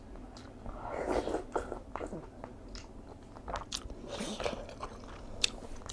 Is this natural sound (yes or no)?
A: yes